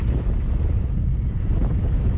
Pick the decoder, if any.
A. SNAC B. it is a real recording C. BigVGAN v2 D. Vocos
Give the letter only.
B